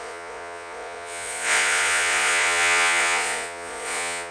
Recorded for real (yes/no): no